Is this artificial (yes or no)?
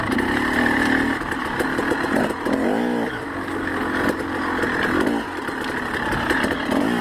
no